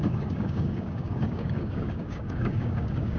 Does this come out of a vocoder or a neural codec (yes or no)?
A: yes